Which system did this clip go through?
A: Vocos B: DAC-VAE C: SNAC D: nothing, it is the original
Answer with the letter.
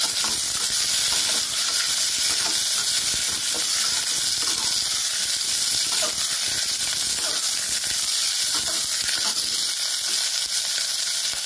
D